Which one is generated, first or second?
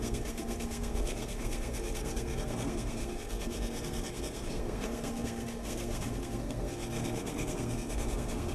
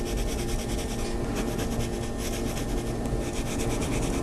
first